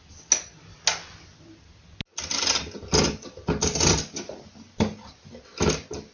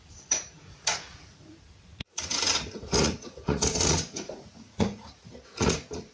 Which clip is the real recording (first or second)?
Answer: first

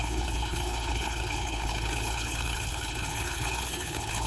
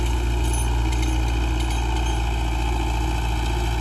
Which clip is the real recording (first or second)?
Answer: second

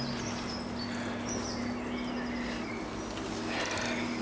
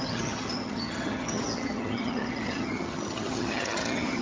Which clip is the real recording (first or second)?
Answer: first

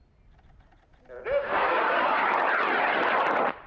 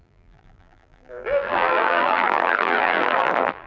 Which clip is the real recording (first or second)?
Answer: first